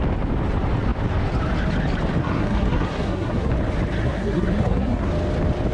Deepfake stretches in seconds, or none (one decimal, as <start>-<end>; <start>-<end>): 2.2-3.5; 4.0-5.1

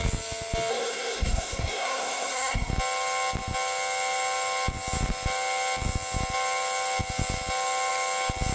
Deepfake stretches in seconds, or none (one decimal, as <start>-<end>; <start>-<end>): 0.7-2.7